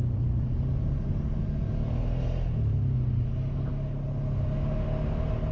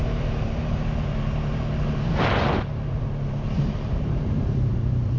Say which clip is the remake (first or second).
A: second